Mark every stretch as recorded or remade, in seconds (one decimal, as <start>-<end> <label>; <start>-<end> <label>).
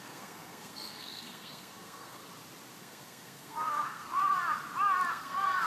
0.0-2.2 remade; 2.2-2.8 recorded; 2.8-4.2 remade; 4.2-5.1 recorded; 5.1-5.7 remade